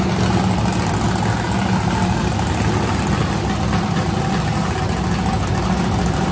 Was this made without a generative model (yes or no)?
yes